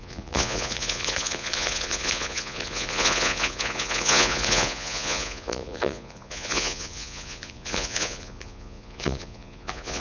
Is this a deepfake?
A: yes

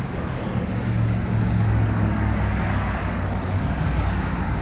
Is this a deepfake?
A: yes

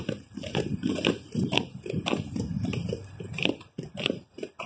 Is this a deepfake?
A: yes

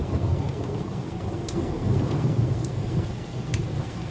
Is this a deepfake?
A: yes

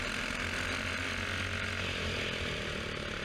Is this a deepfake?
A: no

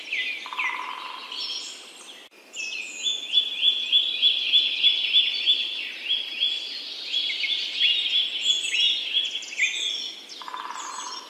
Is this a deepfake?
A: no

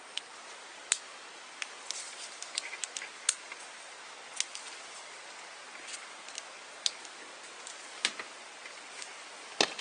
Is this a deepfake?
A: no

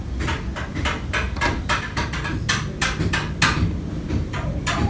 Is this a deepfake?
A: no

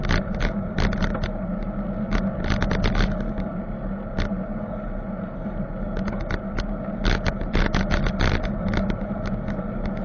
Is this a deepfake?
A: no